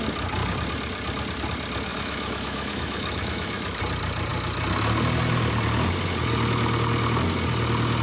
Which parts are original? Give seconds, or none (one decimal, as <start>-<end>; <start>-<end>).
0.0-1.9; 3.8-8.0